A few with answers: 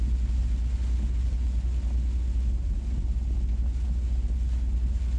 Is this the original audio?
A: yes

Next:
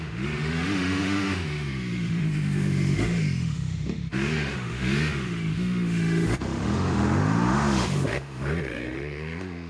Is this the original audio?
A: no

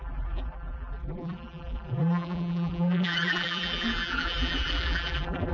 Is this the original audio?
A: no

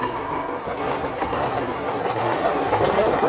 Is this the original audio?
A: no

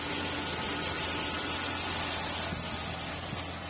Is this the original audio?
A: yes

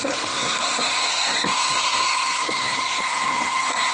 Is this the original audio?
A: no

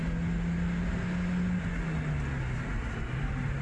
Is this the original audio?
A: yes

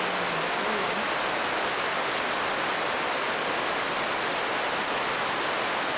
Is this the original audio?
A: yes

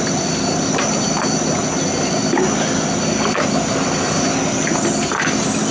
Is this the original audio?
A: yes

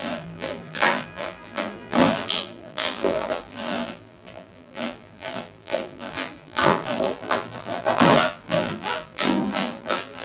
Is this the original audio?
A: no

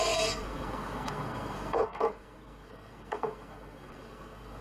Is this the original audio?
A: no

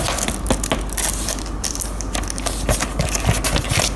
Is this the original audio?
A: yes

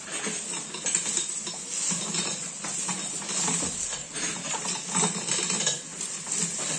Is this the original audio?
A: yes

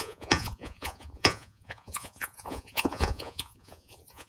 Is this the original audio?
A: no